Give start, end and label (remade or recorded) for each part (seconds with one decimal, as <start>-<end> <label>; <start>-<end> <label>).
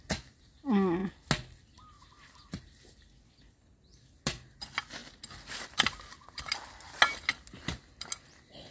0.0-8.7 recorded